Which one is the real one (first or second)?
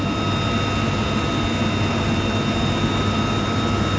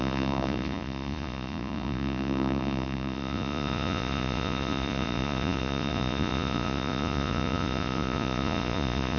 first